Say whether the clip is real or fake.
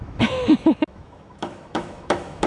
fake